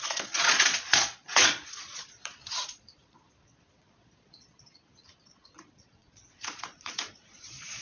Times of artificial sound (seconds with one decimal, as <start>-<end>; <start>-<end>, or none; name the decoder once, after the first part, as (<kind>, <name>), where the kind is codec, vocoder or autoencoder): 0.0-7.8 (vocoder, Vocos)